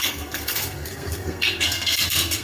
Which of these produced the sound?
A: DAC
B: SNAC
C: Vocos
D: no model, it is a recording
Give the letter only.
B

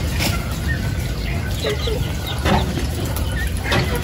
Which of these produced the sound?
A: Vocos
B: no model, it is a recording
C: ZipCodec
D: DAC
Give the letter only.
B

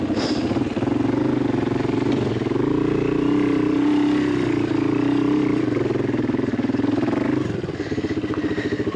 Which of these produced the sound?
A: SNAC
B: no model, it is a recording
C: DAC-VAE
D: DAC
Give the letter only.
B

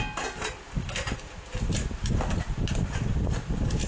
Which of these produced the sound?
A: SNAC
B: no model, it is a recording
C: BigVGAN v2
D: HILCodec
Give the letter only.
B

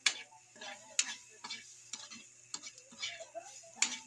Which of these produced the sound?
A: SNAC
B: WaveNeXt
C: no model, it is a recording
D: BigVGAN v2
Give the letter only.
C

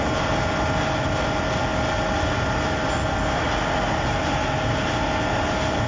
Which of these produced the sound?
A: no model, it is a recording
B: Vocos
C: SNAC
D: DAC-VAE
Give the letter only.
A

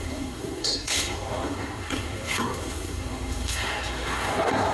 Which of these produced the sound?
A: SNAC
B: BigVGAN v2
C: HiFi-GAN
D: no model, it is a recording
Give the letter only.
A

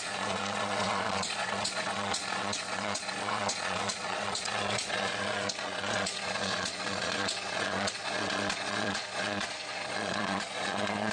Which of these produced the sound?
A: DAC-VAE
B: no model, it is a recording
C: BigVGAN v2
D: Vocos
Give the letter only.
D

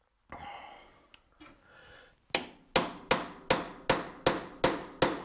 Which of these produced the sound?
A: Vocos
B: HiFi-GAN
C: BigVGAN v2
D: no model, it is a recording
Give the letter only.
D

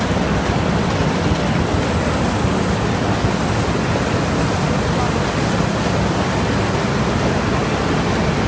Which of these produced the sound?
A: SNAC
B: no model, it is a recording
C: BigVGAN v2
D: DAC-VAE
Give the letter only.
B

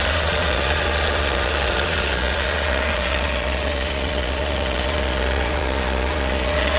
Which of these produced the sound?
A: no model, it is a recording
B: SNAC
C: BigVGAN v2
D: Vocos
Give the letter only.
D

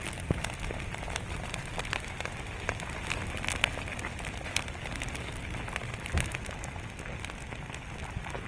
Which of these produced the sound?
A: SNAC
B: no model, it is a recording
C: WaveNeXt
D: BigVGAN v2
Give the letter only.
B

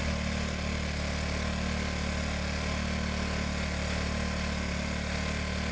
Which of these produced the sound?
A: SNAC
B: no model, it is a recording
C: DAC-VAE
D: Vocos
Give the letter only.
B